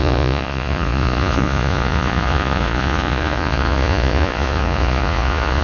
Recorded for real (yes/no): no